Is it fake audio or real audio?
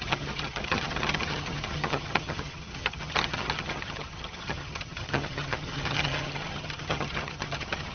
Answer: fake